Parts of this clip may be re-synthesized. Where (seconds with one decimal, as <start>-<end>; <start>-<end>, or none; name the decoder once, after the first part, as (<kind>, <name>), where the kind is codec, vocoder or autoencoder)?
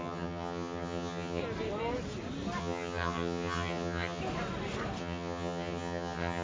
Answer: 0.0-1.4 (vocoder, HiFi-GAN); 2.6-4.2; 5.0-6.4